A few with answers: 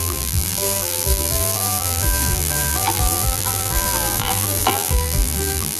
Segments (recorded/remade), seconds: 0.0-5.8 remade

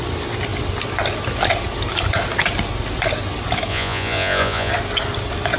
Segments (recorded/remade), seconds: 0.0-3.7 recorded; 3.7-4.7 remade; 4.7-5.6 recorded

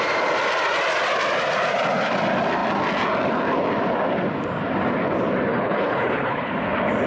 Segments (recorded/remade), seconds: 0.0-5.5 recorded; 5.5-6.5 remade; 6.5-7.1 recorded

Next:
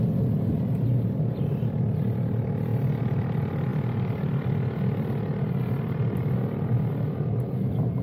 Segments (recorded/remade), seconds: 0.0-8.0 recorded

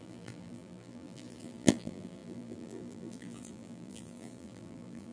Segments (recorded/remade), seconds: 0.0-5.1 remade

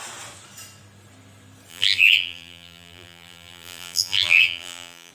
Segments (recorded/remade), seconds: 0.0-1.7 recorded; 1.7-5.1 remade

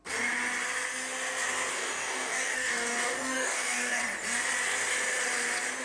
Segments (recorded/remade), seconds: 0.0-1.7 recorded; 1.7-4.0 remade; 4.0-5.8 recorded